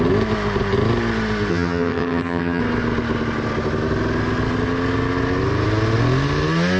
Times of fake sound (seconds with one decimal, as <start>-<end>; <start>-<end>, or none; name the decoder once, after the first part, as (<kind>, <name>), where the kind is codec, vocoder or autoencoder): 1.5-2.6 (vocoder, HiFi-GAN)